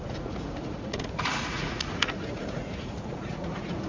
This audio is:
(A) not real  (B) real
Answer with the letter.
A